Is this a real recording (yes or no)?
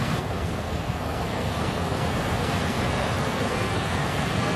no